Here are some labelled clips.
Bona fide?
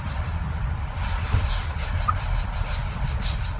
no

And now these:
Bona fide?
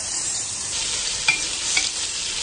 no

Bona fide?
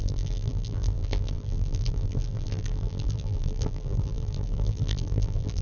no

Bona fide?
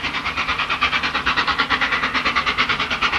no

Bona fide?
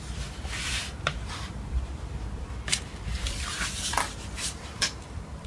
no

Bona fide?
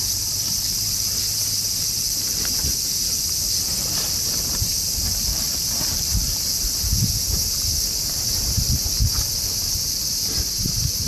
no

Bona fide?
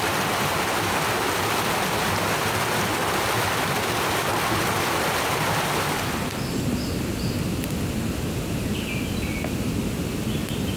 yes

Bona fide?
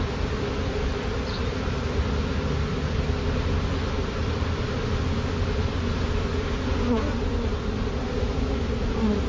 yes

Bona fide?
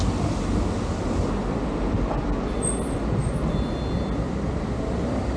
yes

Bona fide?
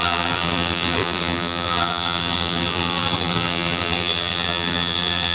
no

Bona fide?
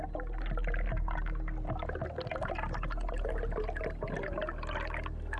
yes